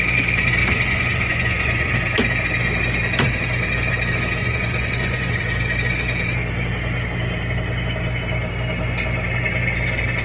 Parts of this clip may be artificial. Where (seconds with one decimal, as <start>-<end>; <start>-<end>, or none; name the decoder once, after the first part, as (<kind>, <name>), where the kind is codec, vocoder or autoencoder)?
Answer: 0.6-1.9 (vocoder, Vocos); 4.4-5.4